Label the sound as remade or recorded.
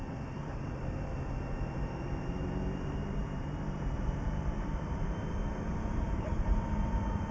remade